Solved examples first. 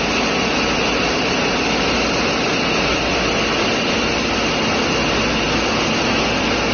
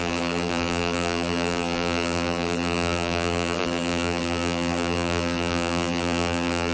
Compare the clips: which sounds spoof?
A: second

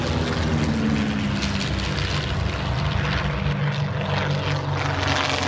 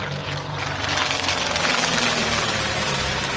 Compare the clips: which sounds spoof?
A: second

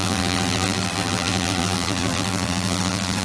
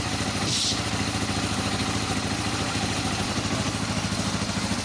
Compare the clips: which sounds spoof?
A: first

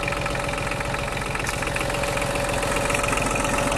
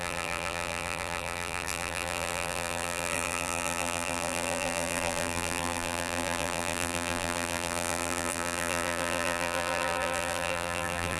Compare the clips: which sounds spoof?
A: second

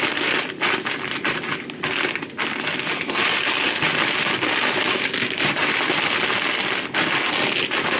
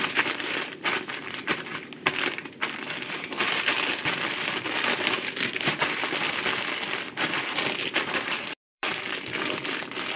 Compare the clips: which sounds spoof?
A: second